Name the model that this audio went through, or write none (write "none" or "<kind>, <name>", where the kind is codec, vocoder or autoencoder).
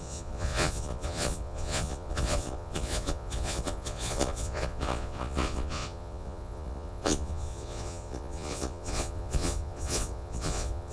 vocoder, Vocos